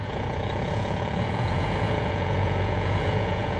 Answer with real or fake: fake